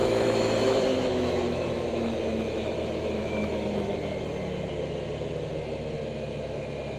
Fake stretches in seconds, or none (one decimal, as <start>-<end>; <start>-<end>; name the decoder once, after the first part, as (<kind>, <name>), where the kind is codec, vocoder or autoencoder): 0.0-4.2 (autoencoder, DAC-VAE)